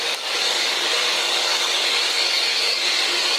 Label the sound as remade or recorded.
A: remade